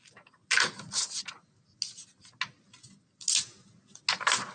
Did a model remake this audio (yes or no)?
no